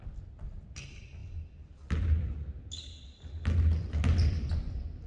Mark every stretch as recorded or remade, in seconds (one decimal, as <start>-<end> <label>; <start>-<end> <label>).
0.0-5.1 recorded